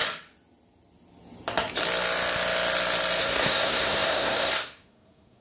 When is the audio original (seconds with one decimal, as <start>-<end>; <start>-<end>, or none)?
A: 0.0-3.2